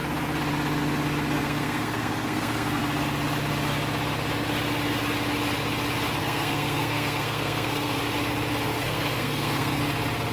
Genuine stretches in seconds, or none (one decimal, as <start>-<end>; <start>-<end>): 0.0-1.4; 2.8-6.2; 8.0-8.7; 9.8-10.3